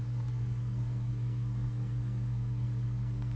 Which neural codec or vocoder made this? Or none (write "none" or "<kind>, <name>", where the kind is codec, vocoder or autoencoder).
codec, SNAC